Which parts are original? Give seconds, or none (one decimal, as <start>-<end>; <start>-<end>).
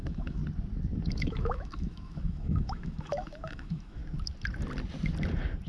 0.4-1.1; 4.0-5.7